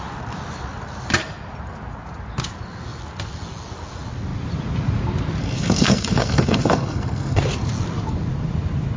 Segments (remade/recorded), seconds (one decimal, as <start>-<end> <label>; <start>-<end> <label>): 0.0-5.4 recorded; 5.4-7.4 remade; 7.4-9.0 recorded